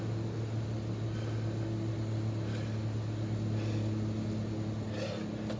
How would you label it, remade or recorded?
recorded